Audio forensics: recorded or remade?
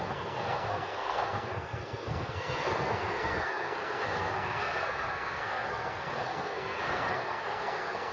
remade